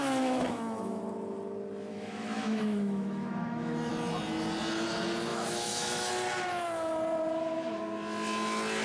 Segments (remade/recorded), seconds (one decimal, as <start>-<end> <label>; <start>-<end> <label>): 0.0-1.0 remade; 1.0-1.9 recorded; 1.9-3.9 remade; 3.9-5.3 recorded; 5.3-6.1 remade; 6.1-8.8 recorded

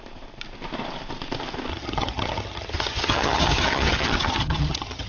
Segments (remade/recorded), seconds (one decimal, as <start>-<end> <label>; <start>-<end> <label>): 0.0-1.7 recorded; 1.7-5.1 remade

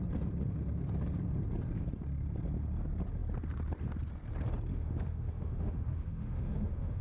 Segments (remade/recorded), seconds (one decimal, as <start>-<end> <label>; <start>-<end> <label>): 0.0-4.7 recorded; 4.7-7.0 remade

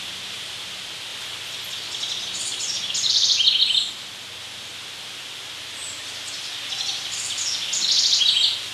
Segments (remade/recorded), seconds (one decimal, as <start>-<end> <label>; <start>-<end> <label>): 0.0-8.7 recorded

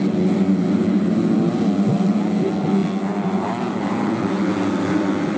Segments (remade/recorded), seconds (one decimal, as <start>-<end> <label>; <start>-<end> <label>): 0.0-5.4 recorded